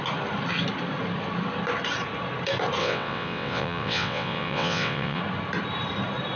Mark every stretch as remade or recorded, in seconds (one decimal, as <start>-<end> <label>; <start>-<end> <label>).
0.0-2.8 recorded; 2.8-5.2 remade; 5.2-6.4 recorded